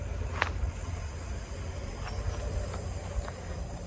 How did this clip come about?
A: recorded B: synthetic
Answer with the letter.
A